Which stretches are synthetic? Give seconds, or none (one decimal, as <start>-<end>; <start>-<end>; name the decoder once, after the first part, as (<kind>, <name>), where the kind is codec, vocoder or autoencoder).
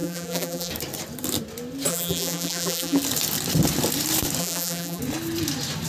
0.0-0.7 (vocoder, BigVGAN v2); 1.9-3.0; 4.4-5.0